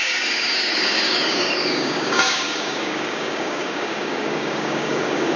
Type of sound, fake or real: fake